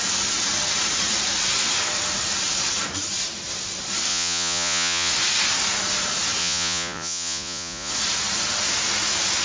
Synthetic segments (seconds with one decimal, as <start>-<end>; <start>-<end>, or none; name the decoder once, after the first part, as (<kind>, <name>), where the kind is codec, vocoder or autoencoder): 4.1-5.1 (vocoder, Vocos); 6.4-7.9